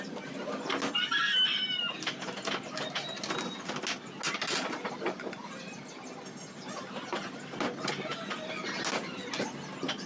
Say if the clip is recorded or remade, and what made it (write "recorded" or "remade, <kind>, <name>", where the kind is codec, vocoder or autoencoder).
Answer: recorded